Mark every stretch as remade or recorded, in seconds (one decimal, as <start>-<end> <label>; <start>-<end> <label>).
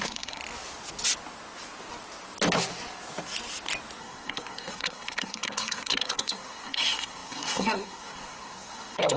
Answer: 0.0-0.4 remade; 0.4-4.0 recorded; 4.0-9.2 remade